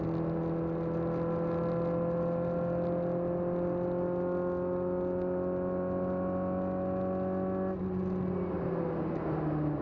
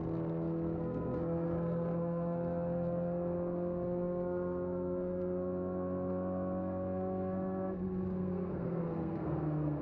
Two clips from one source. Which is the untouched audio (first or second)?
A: first